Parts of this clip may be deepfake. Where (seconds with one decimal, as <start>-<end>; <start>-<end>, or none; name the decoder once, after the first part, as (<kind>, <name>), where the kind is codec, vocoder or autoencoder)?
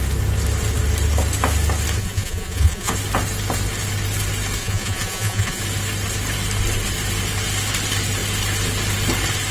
2.0-2.9 (vocoder, Vocos); 4.6-5.6